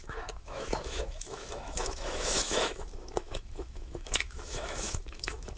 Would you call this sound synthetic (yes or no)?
yes